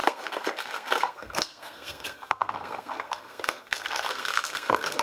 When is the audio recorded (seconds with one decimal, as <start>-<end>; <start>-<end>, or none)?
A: none